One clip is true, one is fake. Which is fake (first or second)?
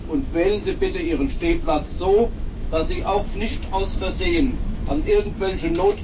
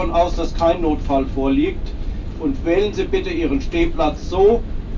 first